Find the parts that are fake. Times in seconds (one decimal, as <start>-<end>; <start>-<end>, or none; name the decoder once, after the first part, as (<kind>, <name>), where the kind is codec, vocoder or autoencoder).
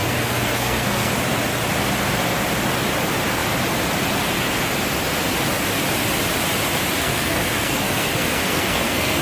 0.0-1.1 (codec, SNAC); 7.0-9.2